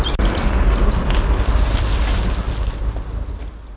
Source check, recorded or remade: recorded